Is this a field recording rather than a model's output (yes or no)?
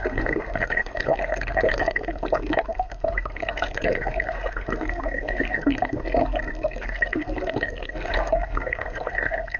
no